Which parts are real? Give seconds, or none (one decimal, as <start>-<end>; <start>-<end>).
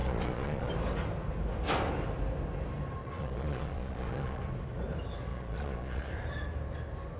0.7-3.0; 4.4-5.3; 6.1-7.2